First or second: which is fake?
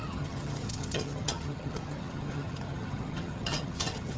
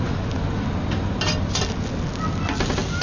first